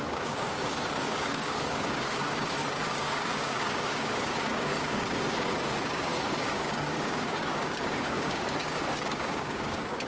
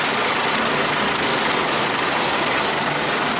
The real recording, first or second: second